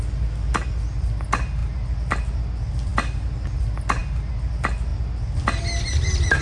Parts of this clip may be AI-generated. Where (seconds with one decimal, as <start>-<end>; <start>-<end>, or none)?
none